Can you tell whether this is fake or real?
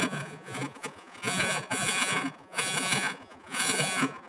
fake